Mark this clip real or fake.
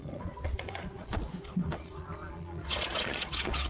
fake